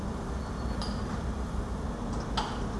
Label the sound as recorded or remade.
recorded